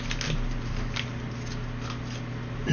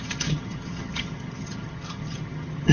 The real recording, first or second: first